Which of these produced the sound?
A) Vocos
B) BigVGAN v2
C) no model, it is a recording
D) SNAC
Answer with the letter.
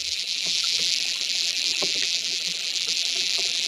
B